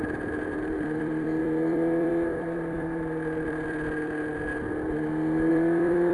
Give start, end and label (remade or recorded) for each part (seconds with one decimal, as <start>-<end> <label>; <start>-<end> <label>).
0.0-4.5 remade; 4.5-5.5 recorded; 5.5-6.1 remade